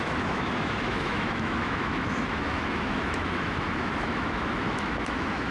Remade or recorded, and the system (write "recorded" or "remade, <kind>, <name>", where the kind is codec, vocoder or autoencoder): remade, autoencoder, DAC-VAE